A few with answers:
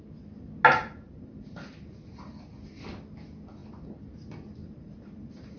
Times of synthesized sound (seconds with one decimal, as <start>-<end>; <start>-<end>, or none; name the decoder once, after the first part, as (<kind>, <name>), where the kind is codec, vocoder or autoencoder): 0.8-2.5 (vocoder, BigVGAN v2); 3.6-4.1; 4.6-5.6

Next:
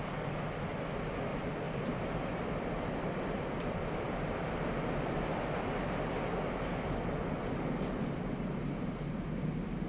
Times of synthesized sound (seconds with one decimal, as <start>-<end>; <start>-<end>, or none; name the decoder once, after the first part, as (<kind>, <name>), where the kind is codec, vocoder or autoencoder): 1.3-5.2 (vocoder, BigVGAN v2)

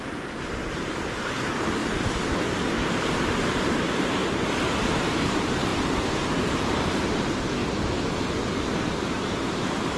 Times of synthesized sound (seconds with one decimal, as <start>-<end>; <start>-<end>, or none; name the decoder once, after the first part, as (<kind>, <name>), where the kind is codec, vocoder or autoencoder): 0.0-1.8 (vocoder, BigVGAN v2); 2.7-4.2; 5.0-5.7; 6.4-7.6; 8.6-10.0

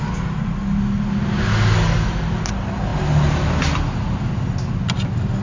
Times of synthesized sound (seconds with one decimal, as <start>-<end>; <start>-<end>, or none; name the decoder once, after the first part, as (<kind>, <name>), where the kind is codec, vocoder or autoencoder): none

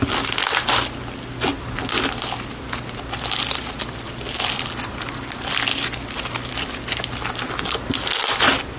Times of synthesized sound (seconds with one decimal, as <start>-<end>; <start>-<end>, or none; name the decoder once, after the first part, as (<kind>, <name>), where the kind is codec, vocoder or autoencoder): none

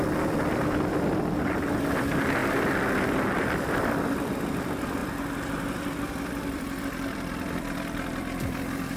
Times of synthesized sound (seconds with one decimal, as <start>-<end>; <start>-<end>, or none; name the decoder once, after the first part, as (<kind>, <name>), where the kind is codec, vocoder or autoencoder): 0.0-9.0 (vocoder, BigVGAN v2)